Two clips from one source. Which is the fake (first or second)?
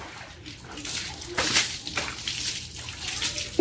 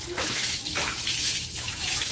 second